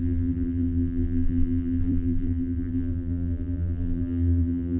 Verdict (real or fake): fake